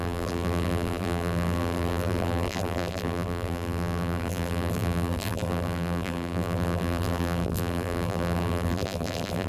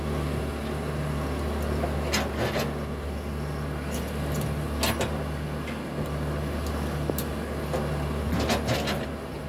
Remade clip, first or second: first